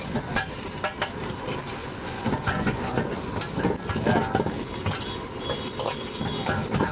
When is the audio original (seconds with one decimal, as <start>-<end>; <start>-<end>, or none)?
0.0-1.8; 3.0-6.9